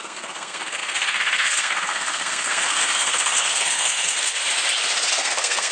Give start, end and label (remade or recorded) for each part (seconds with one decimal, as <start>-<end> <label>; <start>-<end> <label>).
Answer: 0.0-4.4 remade; 4.4-5.1 recorded; 5.1-5.7 remade